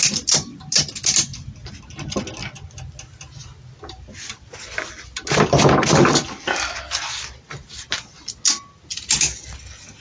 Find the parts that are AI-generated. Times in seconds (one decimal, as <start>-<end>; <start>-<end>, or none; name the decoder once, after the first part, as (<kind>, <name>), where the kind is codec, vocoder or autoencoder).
none